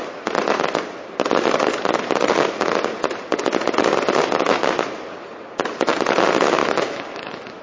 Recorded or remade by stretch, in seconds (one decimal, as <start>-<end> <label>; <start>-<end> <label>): 0.0-6.6 recorded; 6.6-7.6 remade